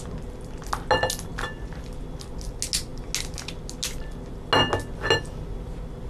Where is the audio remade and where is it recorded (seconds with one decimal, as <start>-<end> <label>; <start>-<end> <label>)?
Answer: 0.0-6.1 recorded